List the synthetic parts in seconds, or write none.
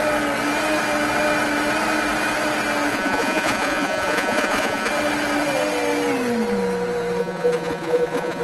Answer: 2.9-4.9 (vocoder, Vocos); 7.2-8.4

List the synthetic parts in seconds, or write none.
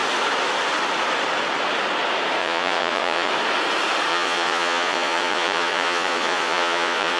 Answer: 2.4-3.3 (vocoder, Vocos); 4.1-7.2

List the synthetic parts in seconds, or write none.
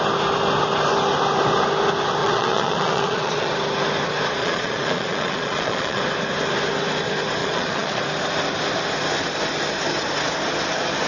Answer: 2.2-3.5 (vocoder, Vocos); 4.4-6.0; 7.4-8.0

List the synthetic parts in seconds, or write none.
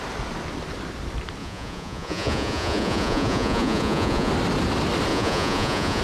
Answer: 1.4-4.3 (vocoder, Vocos); 5.1-6.0